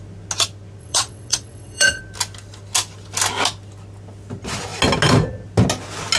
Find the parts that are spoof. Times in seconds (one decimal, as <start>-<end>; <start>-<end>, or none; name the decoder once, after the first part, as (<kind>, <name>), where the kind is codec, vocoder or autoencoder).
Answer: 0.8-2.0 (vocoder, WaveNeXt)